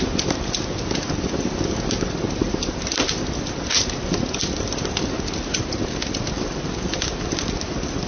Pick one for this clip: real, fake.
real